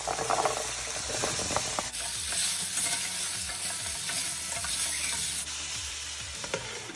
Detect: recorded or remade recorded